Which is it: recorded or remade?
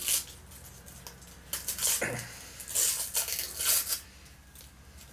recorded